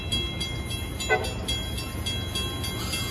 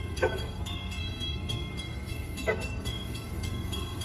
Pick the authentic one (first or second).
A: first